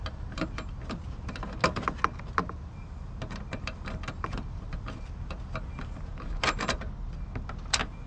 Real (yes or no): yes